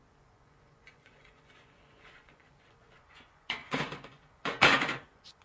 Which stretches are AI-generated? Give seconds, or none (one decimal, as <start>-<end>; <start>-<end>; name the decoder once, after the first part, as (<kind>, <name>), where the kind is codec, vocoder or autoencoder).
0.0-5.4 (vocoder, Vocos)